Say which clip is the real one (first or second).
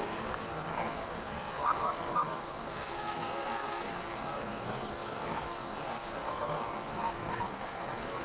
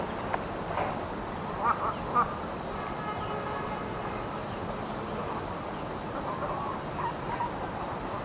second